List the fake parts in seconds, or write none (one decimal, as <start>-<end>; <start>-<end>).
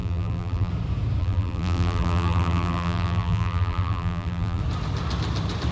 0.0-0.7; 1.2-4.6